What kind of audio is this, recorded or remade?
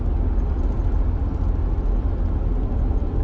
recorded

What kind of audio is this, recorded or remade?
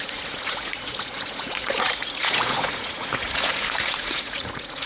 remade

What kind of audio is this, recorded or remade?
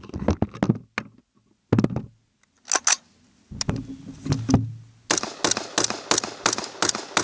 recorded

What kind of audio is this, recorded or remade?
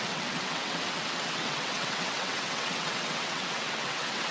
remade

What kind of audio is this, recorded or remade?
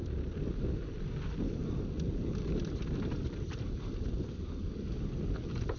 recorded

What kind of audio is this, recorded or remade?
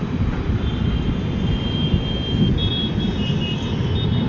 recorded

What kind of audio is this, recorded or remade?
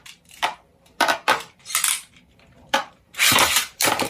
remade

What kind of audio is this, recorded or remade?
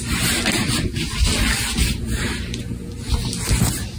recorded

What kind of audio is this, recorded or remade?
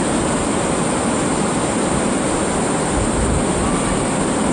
recorded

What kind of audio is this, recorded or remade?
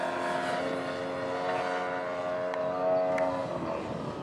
recorded